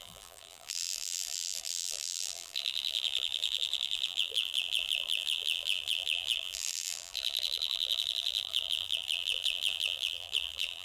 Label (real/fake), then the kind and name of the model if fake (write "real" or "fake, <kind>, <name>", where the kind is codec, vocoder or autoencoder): fake, vocoder, BigVGAN v2